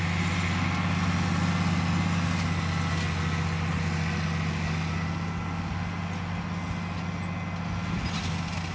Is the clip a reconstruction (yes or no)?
no